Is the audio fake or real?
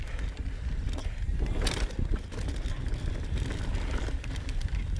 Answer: real